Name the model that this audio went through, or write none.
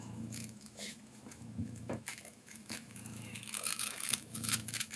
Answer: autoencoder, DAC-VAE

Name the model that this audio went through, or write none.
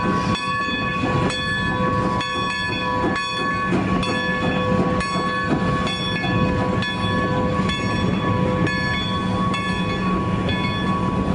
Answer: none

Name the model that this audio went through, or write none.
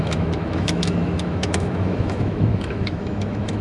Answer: autoencoder, DAC-VAE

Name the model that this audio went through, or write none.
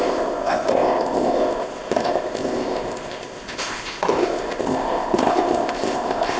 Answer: codec, ZipCodec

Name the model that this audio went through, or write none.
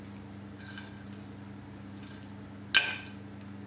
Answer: none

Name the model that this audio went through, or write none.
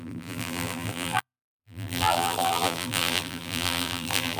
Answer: vocoder, BigVGAN v2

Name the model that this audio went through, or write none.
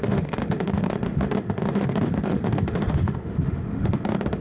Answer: autoencoder, DAC-VAE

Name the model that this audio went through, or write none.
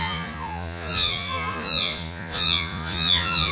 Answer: vocoder, Vocos